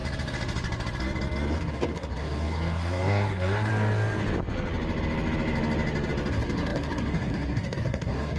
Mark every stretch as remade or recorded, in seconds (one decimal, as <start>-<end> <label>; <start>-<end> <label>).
0.0-1.6 recorded; 1.6-3.7 remade; 3.7-6.3 recorded; 6.3-8.4 remade